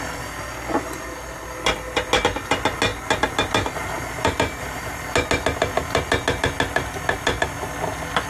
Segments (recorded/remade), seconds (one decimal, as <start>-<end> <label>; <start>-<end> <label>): 0.0-8.3 recorded